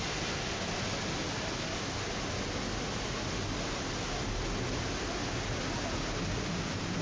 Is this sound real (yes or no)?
yes